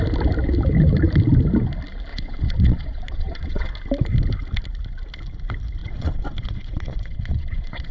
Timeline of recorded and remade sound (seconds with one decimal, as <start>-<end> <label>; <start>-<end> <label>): 0.0-2.1 recorded; 2.1-3.7 remade; 3.7-5.8 recorded; 5.8-7.9 remade